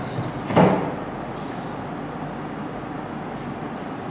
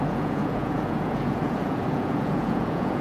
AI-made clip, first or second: second